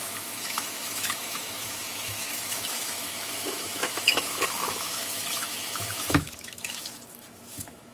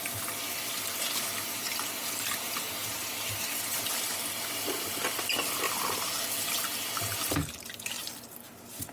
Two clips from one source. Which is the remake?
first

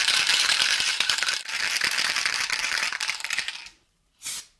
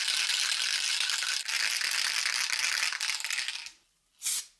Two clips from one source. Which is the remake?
first